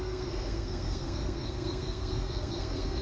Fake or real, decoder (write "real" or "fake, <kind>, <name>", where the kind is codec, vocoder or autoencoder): fake, codec, SNAC